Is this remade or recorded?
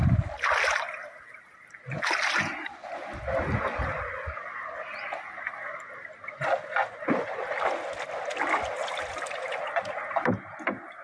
recorded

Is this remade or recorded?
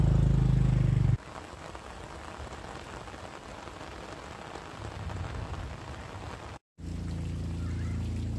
recorded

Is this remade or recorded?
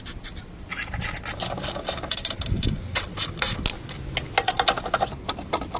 recorded